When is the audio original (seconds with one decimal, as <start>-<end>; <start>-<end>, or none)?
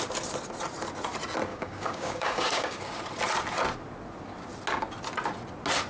0.0-1.5; 3.0-5.9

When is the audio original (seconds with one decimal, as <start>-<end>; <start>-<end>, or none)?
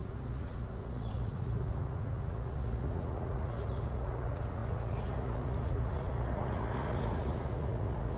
none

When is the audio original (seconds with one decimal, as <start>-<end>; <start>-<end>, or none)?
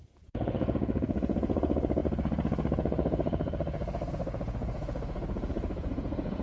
none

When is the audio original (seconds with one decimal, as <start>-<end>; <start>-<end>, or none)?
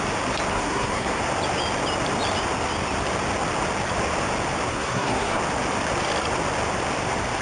0.0-0.5; 1.2-4.7; 5.4-7.4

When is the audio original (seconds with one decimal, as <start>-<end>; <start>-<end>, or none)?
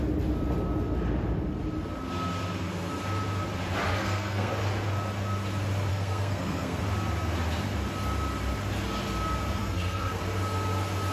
0.0-3.9; 4.5-5.9; 6.8-9.6; 10.2-11.1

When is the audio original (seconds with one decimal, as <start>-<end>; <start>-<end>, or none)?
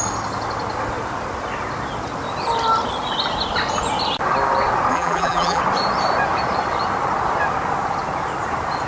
0.0-4.9; 5.6-8.9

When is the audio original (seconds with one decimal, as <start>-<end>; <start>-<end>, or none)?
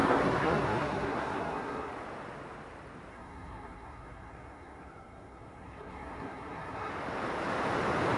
1.9-3.1; 6.9-8.2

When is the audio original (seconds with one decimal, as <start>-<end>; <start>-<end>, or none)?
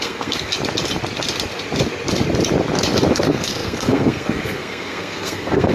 0.5-3.1